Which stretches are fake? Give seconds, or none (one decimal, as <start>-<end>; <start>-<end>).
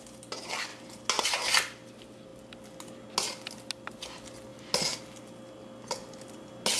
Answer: none